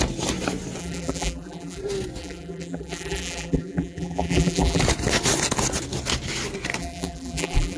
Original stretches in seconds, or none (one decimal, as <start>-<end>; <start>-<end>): 0.0-0.8; 1.8-2.2; 4.8-6.8